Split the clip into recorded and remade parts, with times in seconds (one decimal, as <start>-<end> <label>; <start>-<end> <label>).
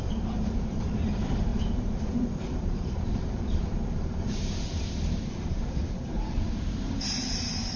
0.0-7.8 remade